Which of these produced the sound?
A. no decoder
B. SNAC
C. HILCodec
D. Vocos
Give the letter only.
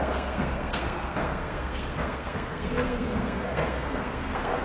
B